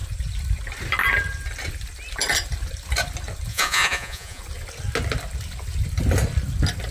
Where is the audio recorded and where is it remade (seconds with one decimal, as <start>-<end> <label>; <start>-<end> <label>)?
0.0-3.5 recorded; 3.5-4.4 remade; 4.4-6.9 recorded